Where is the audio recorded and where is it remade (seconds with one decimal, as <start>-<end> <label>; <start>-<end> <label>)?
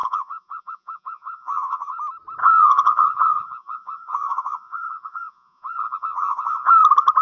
0.0-2.0 remade; 2.0-2.4 recorded; 2.4-6.7 remade; 6.7-7.2 recorded